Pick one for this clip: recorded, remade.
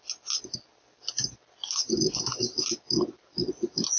recorded